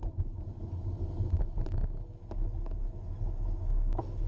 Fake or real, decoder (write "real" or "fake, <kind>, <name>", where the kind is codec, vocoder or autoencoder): real